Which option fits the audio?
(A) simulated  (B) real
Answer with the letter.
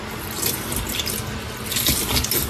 B